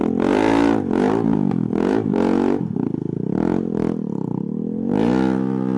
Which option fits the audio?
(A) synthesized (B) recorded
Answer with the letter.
B